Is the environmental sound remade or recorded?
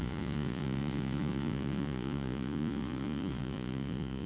remade